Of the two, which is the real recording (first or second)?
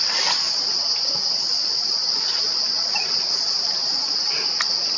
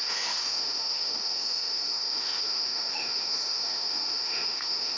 first